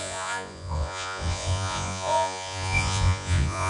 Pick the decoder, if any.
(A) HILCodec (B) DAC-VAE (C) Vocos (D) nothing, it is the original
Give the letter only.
C